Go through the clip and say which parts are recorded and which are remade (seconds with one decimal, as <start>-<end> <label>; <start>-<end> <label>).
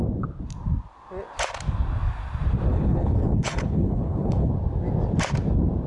0.0-2.7 recorded; 2.7-4.5 remade; 4.5-5.9 recorded